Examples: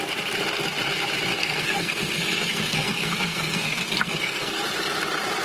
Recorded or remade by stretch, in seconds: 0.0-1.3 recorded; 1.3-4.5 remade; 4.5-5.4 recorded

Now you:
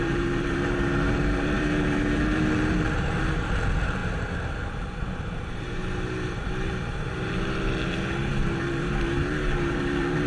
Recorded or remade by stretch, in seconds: 0.0-4.0 remade; 4.0-5.0 recorded; 5.0-10.3 remade